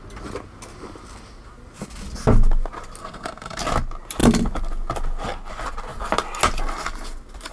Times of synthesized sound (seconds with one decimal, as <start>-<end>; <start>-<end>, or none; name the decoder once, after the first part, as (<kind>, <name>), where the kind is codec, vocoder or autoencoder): 3.0-3.6 (codec, SNAC)